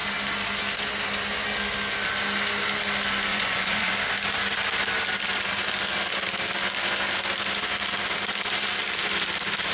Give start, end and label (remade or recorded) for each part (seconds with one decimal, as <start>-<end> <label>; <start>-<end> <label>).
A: 0.0-3.3 recorded; 3.3-3.9 remade; 3.9-9.7 recorded